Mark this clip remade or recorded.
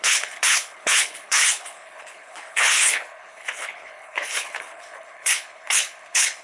remade